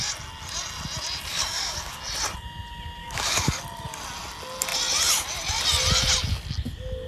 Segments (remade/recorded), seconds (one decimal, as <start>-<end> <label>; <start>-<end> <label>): 0.0-1.3 recorded; 1.3-2.0 remade; 2.0-3.0 recorded; 3.0-3.6 remade; 3.6-7.1 recorded